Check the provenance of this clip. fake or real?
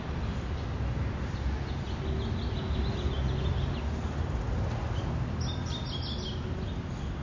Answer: real